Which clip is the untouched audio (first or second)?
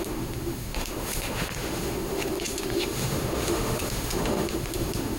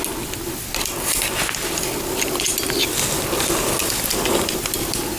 second